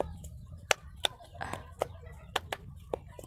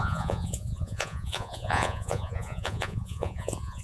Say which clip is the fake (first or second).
second